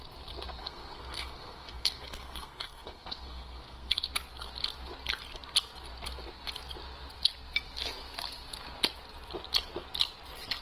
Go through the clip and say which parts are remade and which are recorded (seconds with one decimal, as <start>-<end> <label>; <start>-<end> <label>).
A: 0.0-0.6 recorded; 0.6-4.0 remade; 4.0-10.6 recorded